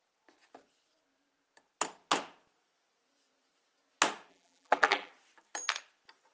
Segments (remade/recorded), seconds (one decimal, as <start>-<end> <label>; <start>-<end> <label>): 0.0-4.3 recorded; 4.3-5.1 remade; 5.1-6.3 recorded